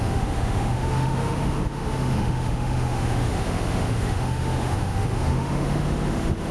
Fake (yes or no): yes